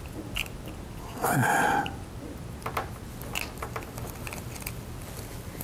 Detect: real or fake real